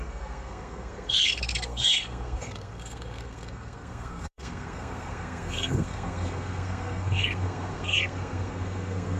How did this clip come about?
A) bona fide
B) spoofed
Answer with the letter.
B